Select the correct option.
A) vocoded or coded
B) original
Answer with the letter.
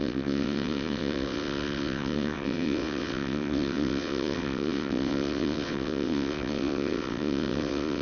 A